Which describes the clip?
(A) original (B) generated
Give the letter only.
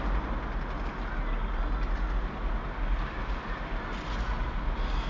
A